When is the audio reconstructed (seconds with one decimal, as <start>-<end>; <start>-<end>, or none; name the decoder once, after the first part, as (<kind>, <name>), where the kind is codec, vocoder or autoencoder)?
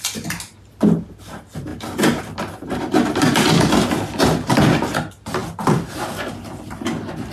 1.7-2.2 (vocoder, BigVGAN v2)